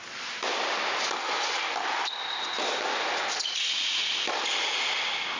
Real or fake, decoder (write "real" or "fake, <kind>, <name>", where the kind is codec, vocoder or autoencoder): real